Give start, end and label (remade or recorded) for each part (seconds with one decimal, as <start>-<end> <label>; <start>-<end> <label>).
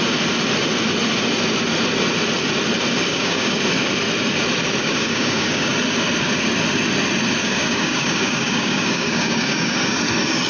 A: 0.0-3.1 recorded; 3.1-3.6 remade; 3.6-4.8 recorded; 4.8-5.7 remade; 5.7-7.4 recorded; 7.4-10.0 remade; 10.0-10.5 recorded